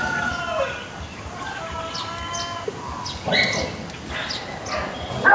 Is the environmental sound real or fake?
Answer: real